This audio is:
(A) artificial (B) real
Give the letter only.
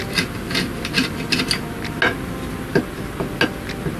B